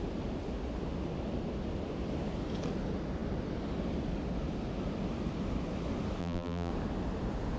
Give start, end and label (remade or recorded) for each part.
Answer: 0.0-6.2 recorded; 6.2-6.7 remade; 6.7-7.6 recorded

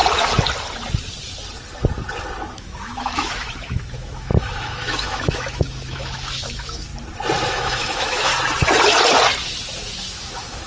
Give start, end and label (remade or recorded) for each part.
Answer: 0.0-2.5 recorded; 2.5-6.9 remade; 6.9-7.5 recorded; 7.5-8.3 remade; 8.3-10.0 recorded; 10.0-10.7 remade

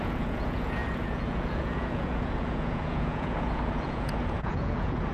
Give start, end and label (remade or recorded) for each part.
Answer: 0.0-5.1 remade

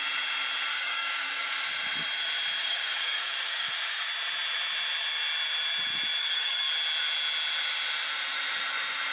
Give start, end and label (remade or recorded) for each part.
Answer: 0.0-0.7 recorded; 0.7-1.4 remade; 1.4-2.6 recorded; 2.6-4.1 remade; 4.1-6.2 recorded; 6.2-6.7 remade; 6.7-9.1 recorded

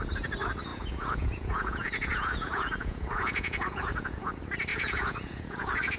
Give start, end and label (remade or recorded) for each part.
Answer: 0.0-0.7 recorded; 0.7-4.3 remade; 4.3-4.7 recorded; 4.7-6.0 remade

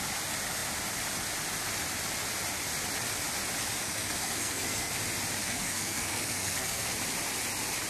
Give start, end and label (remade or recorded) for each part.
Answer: 0.0-3.8 recorded; 3.8-4.9 remade; 4.9-5.4 recorded; 5.4-6.9 remade; 6.9-7.9 recorded